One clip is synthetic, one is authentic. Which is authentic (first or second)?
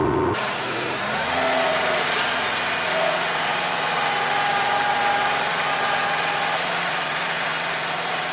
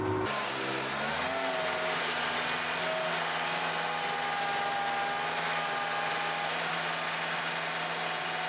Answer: second